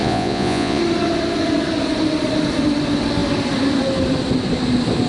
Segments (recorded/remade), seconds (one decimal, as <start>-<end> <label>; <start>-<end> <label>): 0.0-0.8 remade; 0.8-5.1 recorded